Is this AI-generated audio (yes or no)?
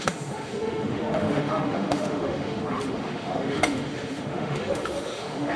yes